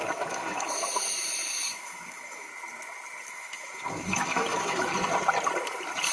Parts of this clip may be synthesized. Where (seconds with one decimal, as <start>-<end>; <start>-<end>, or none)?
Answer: 0.0-2.5; 3.3-4.9